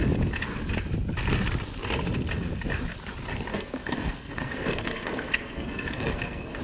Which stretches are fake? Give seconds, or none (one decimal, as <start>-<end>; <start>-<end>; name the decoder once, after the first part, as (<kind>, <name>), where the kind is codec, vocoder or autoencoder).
3.5-6.6 (codec, SNAC)